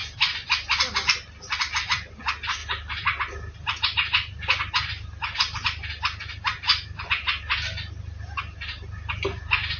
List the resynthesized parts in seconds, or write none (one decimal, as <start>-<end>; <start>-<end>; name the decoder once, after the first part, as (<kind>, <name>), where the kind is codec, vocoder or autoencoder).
none